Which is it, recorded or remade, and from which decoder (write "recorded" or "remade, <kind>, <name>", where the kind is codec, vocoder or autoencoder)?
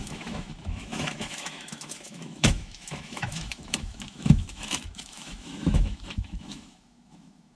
remade, autoencoder, DAC-VAE